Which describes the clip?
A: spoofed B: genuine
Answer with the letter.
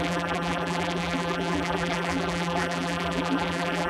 A